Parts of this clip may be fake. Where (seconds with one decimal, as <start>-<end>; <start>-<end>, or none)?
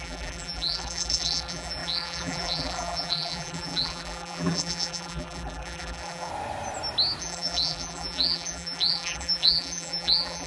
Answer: 0.0-6.3; 7.2-10.5